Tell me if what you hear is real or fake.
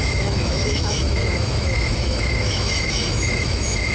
fake